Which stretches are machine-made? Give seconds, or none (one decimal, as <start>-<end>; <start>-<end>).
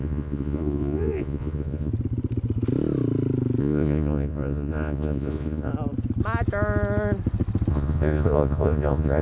0.0-1.9; 3.6-5.7; 7.7-9.2